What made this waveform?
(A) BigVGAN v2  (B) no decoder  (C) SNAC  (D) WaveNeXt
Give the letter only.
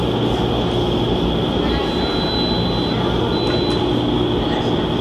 B